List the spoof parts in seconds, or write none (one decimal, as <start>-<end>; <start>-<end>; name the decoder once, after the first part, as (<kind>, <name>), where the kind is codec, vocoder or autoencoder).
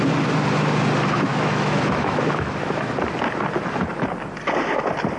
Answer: 1.3-2.9 (autoencoder, DAC-VAE)